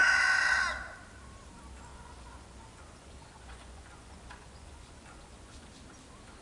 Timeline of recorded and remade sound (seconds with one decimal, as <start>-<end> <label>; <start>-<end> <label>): 0.0-1.9 recorded; 1.9-5.7 remade; 5.7-6.4 recorded